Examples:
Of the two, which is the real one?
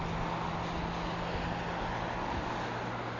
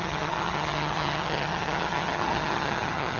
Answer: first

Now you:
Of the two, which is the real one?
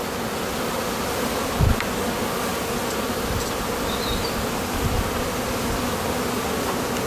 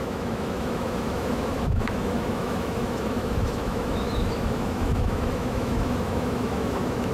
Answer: first